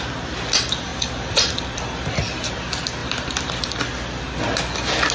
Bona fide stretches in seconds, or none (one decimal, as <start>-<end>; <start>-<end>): 0.0-3.0; 3.8-5.1